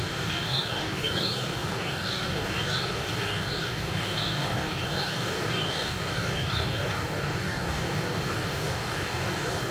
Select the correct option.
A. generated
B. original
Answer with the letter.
A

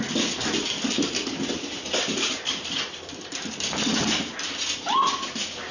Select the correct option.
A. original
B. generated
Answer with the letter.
A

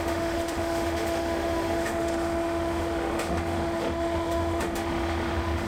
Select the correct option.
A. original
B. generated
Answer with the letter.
B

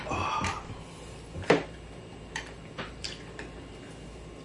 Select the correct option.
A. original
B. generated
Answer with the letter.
B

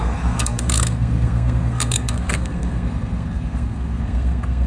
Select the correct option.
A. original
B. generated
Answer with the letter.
B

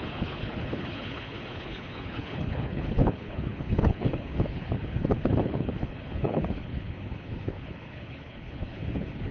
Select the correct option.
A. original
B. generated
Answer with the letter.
B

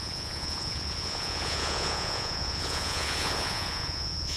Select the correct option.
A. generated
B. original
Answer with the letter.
A